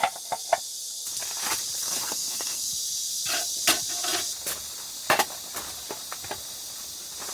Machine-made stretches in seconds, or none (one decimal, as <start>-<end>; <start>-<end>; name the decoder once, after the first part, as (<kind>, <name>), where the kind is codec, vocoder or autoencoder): 1.8-2.7 (codec, SNAC)